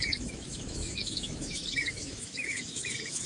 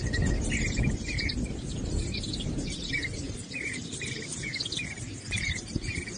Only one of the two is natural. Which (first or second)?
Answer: second